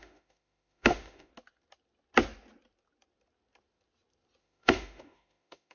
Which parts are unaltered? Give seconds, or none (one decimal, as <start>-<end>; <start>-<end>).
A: 1.3-4.4